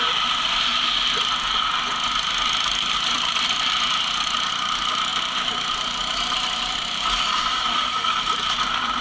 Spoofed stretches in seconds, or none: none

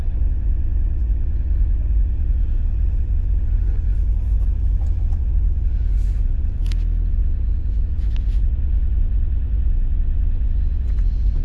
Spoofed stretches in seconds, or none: 0.0-6.6 (vocoder, Vocos); 7.1-11.4